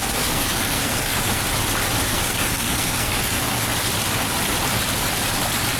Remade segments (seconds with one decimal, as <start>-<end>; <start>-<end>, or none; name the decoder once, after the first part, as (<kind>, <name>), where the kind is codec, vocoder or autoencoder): 0.0-1.4 (codec, SNAC); 2.1-3.7